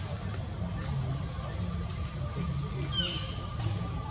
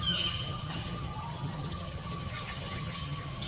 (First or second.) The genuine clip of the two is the first